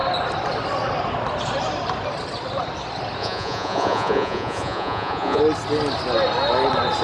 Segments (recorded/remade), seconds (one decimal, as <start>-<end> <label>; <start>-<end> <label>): 0.0-3.2 recorded; 3.2-5.4 remade; 5.4-7.0 recorded